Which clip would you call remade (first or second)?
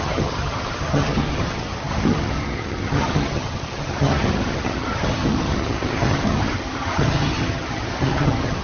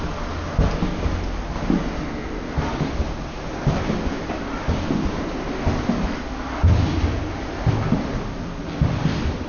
first